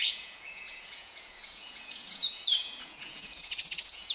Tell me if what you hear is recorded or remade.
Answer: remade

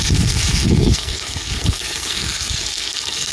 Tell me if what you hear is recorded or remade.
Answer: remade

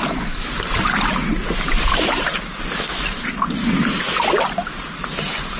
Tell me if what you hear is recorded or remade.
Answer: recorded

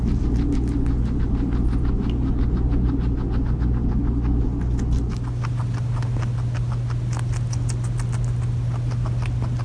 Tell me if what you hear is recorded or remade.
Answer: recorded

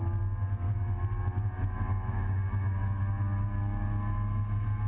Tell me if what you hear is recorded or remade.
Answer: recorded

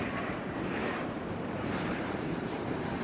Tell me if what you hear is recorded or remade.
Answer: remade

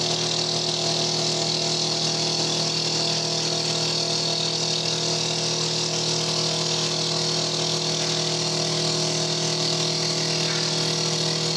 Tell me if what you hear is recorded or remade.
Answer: recorded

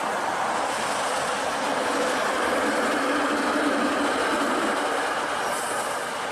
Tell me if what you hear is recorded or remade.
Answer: recorded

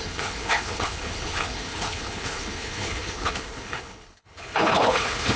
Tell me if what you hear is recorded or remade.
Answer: remade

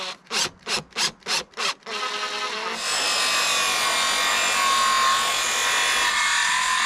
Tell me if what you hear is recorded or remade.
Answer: recorded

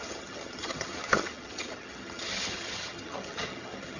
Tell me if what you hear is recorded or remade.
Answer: remade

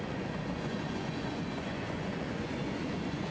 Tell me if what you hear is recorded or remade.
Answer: remade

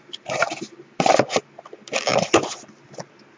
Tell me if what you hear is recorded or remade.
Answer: recorded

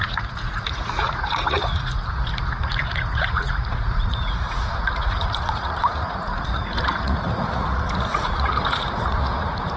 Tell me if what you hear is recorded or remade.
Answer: remade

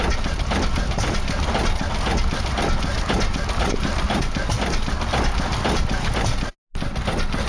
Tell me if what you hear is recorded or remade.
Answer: recorded